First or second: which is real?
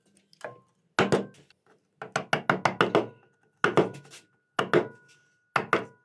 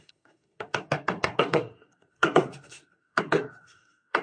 first